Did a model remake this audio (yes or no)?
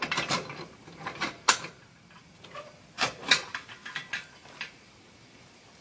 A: yes